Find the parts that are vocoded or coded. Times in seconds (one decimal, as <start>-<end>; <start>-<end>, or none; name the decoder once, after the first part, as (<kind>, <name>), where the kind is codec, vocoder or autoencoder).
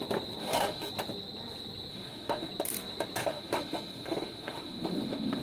0.4-0.9 (autoencoder, DAC-VAE); 1.9-2.5; 3.2-5.4